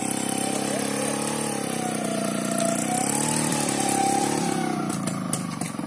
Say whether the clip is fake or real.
real